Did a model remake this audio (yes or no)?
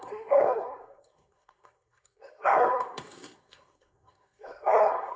yes